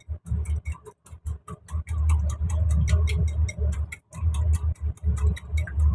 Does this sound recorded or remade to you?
recorded